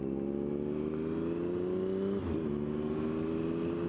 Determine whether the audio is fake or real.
real